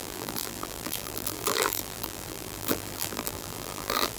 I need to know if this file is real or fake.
fake